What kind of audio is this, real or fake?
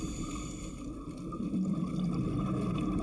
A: real